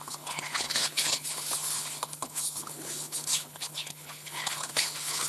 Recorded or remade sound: remade